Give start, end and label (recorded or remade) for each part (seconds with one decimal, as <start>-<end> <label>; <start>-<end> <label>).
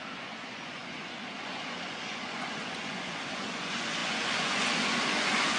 0.0-5.6 remade